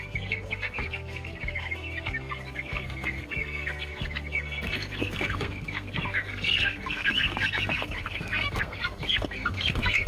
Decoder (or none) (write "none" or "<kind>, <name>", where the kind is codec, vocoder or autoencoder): codec, SNAC